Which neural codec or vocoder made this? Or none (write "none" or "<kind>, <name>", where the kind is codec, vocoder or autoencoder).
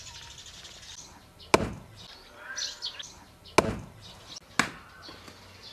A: none